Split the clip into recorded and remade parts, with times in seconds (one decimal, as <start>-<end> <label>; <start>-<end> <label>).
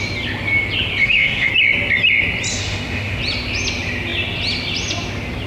0.0-1.0 recorded; 1.0-1.5 remade; 1.5-2.5 recorded; 2.5-3.2 remade; 3.2-5.5 recorded